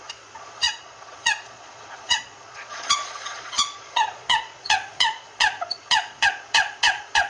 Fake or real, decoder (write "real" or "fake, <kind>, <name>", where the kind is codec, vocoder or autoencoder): fake, vocoder, Vocos